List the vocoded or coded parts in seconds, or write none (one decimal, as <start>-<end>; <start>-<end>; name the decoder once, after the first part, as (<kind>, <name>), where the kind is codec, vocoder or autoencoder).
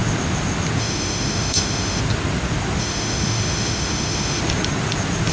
0.8-2.0 (autoencoder, DAC-VAE); 2.8-4.4